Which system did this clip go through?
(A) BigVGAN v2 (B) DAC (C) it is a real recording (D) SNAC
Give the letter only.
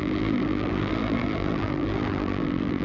A